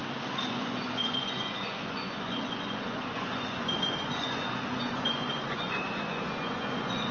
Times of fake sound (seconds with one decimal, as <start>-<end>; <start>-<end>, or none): 0.5-7.1